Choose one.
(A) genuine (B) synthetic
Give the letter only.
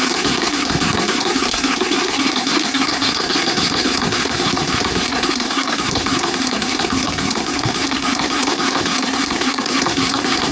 B